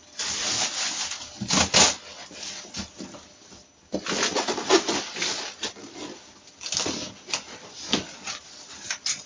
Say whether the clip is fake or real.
real